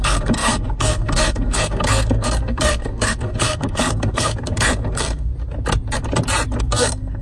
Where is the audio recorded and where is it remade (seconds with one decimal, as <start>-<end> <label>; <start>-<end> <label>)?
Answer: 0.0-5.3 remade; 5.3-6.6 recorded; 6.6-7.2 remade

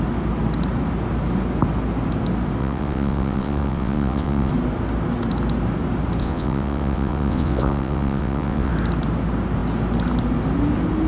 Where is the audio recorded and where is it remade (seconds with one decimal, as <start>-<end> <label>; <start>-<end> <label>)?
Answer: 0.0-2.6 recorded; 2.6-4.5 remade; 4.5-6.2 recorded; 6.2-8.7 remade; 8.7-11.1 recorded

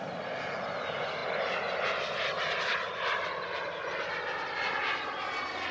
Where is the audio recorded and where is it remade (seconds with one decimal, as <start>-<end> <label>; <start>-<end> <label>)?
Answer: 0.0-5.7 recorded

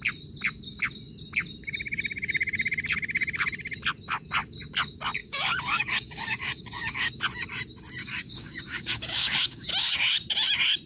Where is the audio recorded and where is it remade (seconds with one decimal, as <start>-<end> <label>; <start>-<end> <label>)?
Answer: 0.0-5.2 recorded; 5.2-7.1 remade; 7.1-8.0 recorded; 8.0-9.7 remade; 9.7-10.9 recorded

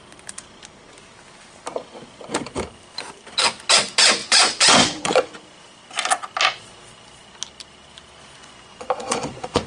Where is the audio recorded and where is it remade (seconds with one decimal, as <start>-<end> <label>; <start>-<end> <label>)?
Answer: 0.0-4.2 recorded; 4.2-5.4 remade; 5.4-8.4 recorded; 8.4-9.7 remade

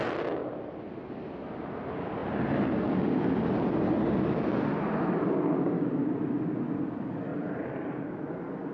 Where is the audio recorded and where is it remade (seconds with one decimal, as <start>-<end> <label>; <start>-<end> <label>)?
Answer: 0.0-7.3 recorded; 7.3-8.2 remade; 8.2-8.7 recorded